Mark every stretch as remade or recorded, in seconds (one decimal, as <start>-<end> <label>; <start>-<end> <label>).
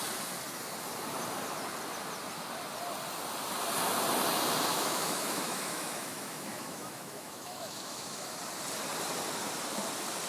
0.0-4.7 recorded; 4.7-8.4 remade; 8.4-10.3 recorded